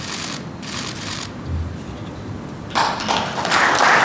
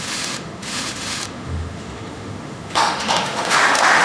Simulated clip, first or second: second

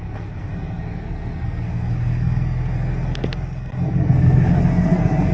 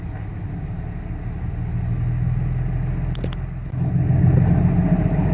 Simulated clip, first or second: first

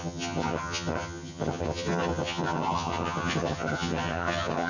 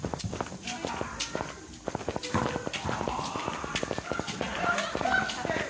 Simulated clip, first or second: first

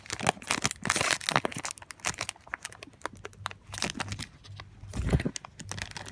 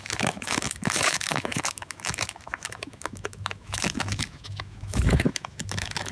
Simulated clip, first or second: second